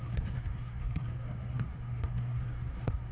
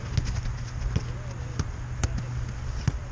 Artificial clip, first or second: first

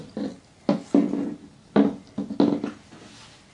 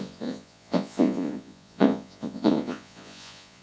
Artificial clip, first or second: second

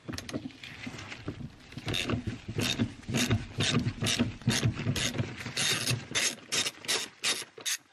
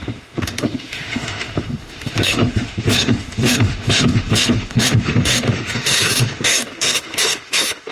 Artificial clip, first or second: second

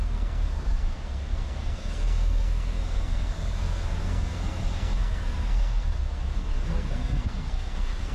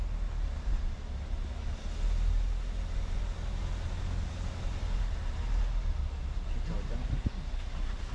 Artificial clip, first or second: first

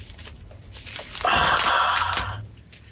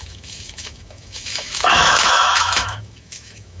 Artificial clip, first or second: second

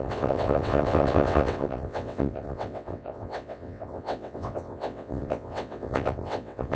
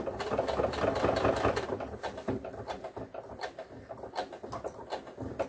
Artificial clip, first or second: first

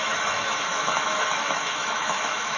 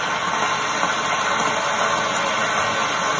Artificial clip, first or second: first